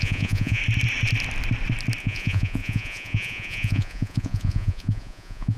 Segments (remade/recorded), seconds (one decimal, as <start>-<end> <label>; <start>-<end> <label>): 0.0-0.6 remade; 0.6-2.0 recorded; 2.0-5.6 remade